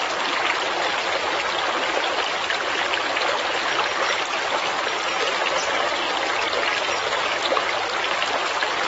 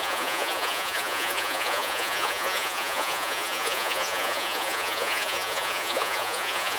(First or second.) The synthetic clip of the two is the second